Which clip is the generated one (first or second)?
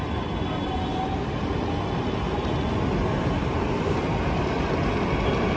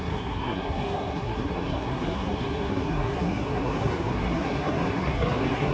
second